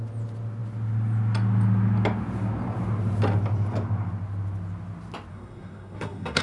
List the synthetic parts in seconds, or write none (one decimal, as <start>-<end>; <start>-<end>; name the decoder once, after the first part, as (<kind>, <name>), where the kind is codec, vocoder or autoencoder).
5.3-6.4 (codec, SNAC)